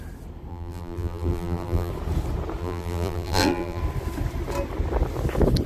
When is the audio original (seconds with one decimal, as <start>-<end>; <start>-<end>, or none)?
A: 0.0-0.5; 1.9-2.6; 3.8-5.7